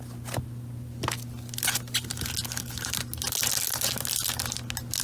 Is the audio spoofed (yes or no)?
no